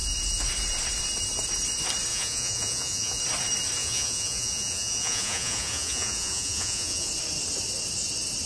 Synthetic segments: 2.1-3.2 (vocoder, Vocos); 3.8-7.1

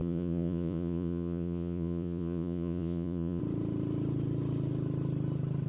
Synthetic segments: 0.0-3.4 (vocoder, Vocos)

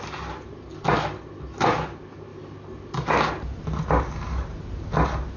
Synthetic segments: none

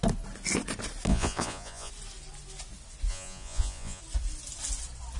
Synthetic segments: 1.1-1.9 (vocoder, Vocos); 3.1-4.0